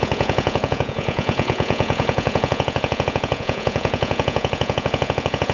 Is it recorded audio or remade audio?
remade